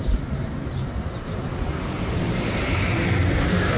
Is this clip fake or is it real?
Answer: fake